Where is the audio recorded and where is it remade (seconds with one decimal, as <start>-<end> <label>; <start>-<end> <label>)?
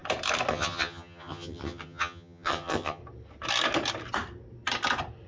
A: 0.0-0.5 recorded; 0.5-3.0 remade; 3.0-5.3 recorded